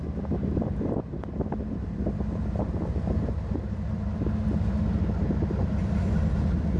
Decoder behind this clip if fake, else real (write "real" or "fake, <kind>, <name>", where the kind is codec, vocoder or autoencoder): real